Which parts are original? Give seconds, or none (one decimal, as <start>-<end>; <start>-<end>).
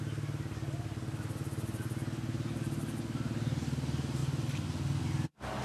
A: 0.0-5.6